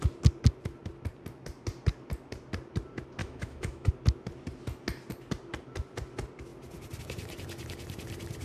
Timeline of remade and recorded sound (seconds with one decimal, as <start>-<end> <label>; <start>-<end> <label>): 0.0-3.2 recorded; 3.2-3.9 remade; 3.9-8.4 recorded